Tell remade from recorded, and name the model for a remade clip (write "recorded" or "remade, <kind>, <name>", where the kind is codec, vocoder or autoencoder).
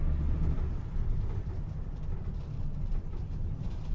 recorded